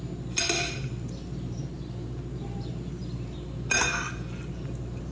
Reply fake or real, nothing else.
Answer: real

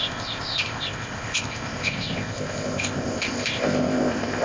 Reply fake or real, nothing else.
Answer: fake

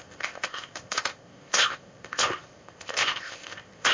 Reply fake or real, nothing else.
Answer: fake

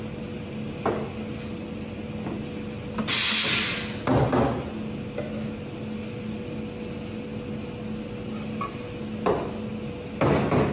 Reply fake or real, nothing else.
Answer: real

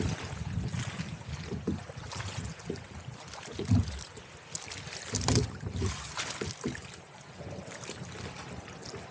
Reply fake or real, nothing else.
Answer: real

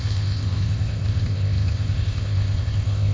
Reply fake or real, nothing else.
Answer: fake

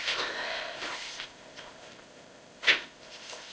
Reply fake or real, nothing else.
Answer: fake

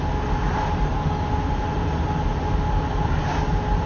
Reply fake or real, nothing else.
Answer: real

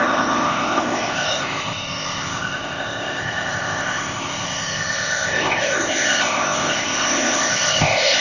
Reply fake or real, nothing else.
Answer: fake